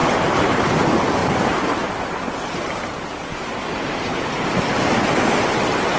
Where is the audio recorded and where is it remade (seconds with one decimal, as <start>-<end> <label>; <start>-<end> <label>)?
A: 0.0-0.7 remade; 0.7-1.2 recorded; 1.2-4.8 remade; 4.8-6.0 recorded